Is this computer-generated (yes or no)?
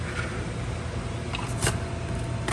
no